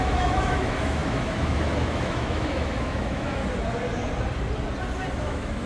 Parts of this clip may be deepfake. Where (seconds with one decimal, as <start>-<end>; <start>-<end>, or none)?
0.0-3.4; 5.2-5.7